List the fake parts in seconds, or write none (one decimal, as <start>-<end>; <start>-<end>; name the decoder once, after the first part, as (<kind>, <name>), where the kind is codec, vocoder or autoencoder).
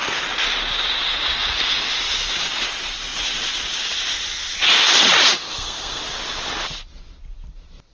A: 5.4-6.0 (codec, SNAC)